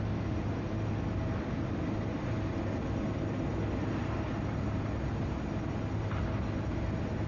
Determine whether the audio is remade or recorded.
recorded